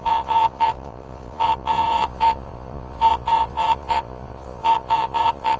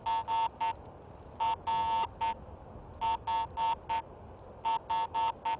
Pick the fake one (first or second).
first